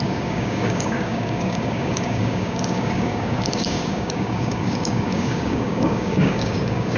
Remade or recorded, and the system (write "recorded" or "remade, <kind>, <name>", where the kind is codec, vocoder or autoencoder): remade, codec, DAC